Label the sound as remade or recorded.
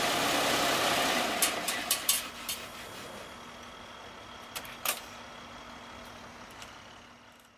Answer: recorded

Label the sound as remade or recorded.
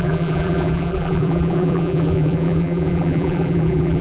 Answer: remade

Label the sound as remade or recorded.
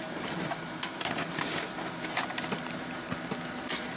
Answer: remade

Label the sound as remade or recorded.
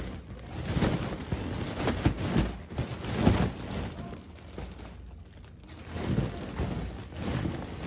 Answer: recorded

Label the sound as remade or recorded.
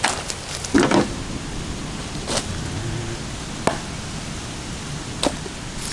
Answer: recorded